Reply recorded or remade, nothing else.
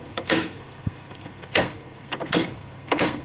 remade